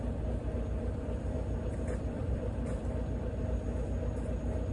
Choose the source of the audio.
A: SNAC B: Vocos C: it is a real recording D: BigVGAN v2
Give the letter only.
D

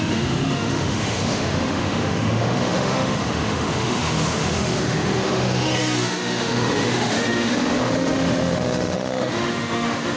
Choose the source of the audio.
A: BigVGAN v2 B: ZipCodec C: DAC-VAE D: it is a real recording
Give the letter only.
C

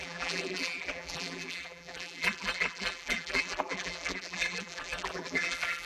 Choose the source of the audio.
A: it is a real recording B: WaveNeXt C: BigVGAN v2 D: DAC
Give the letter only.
C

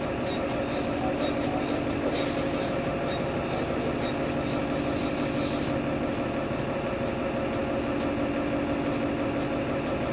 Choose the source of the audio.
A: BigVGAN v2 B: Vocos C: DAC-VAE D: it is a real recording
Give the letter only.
D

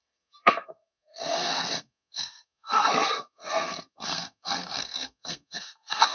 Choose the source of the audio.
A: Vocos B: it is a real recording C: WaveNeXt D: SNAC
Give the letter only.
D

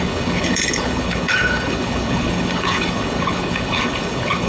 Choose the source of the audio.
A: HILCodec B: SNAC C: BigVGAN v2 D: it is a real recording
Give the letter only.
A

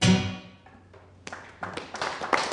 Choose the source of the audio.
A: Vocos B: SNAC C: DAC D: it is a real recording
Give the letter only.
D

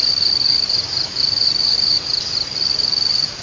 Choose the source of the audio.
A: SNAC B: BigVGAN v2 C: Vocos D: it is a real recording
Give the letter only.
D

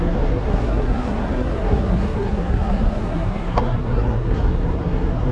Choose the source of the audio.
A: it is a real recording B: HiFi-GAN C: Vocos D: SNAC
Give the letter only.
D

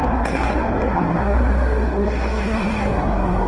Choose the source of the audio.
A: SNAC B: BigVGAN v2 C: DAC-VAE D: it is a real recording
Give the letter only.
A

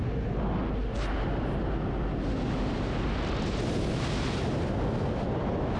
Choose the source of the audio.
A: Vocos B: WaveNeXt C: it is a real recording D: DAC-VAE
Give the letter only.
C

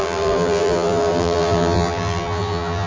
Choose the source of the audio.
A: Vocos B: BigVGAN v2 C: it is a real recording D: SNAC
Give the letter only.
B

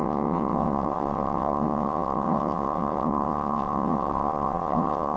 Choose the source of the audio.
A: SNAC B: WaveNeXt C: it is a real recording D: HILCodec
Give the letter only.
B